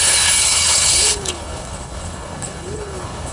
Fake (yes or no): yes